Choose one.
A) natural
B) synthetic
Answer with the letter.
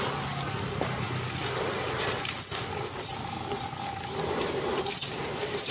A